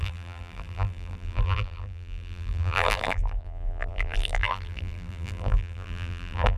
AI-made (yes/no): yes